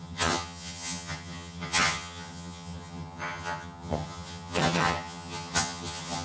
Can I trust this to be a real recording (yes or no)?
no